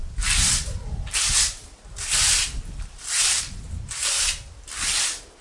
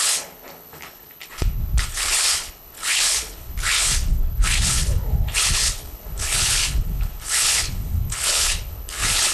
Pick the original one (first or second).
first